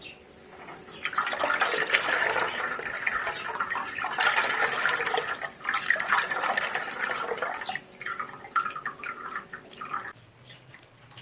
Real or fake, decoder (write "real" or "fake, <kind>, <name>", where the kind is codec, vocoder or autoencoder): real